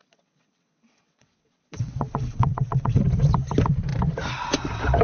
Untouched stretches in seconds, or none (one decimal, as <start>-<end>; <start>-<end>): 3.0-5.0